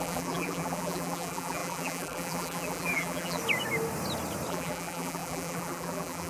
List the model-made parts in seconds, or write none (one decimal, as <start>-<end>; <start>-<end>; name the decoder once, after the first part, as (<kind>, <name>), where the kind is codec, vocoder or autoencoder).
0.0-3.4 (vocoder, BigVGAN v2); 4.5-6.3